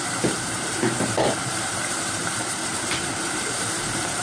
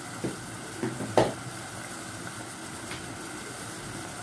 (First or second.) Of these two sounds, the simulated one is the first